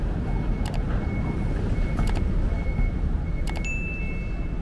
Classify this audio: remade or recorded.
recorded